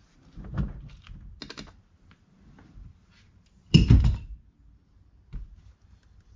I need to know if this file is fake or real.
real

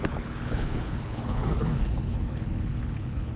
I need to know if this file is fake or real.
fake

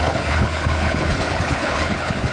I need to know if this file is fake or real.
fake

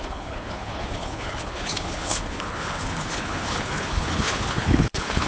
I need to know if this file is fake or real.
fake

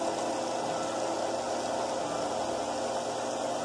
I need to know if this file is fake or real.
real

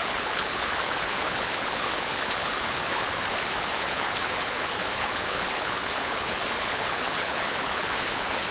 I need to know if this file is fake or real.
fake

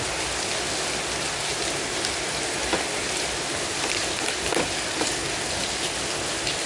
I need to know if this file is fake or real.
real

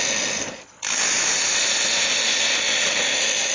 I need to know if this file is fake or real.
real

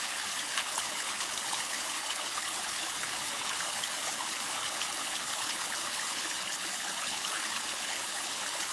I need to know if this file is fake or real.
fake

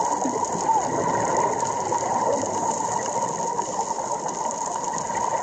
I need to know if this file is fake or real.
real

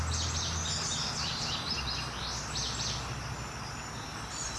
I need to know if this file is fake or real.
real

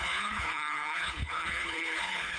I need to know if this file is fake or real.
fake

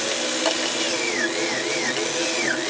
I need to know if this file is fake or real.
real